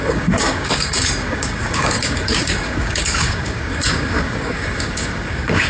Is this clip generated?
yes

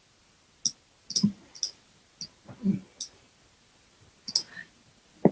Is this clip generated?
no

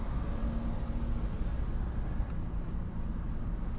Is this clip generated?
no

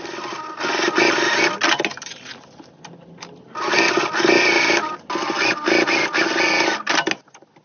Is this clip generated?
no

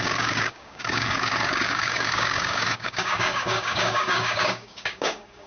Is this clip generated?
yes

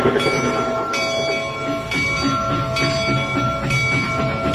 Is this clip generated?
no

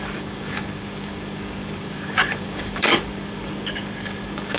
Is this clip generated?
yes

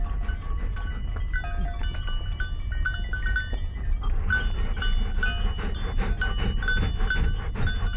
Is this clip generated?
no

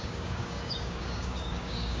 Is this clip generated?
yes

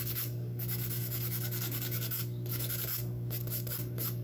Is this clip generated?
yes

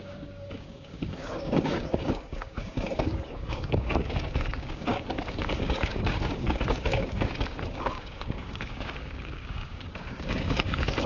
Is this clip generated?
yes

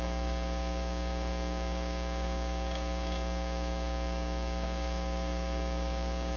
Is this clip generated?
yes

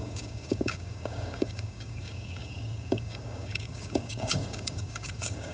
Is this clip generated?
yes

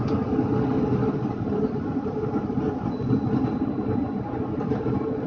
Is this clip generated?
no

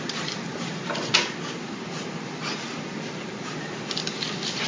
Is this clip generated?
no